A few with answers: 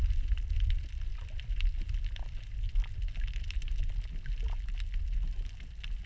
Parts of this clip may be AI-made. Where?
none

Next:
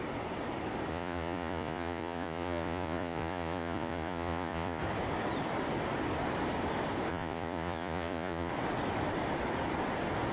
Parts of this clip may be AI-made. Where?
0.9-4.8 (vocoder, Vocos); 7.1-8.5

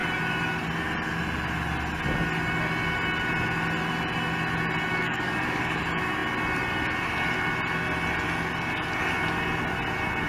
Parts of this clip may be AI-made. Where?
4.9-5.8 (codec, DAC)

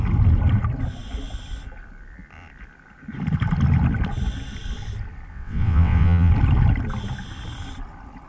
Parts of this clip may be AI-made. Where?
5.3-6.3 (vocoder, WaveNeXt)

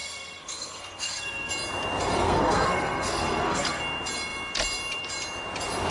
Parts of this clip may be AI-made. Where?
0.0-1.5 (codec, SNAC); 2.2-3.8

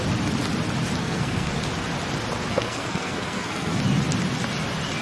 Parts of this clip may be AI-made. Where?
1.0-1.6 (codec, SNAC); 2.5-3.8